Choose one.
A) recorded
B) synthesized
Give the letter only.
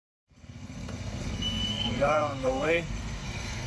B